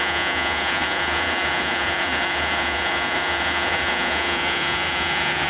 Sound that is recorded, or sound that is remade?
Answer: remade